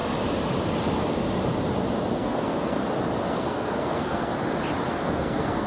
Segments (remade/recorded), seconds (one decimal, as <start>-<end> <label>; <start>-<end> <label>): 0.0-2.1 recorded; 2.1-2.8 remade; 2.8-3.3 recorded; 3.3-4.3 remade; 4.3-4.9 recorded; 4.9-5.7 remade